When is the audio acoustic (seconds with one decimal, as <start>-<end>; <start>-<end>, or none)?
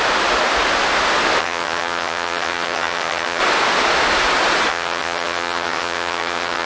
0.0-1.4; 3.4-4.7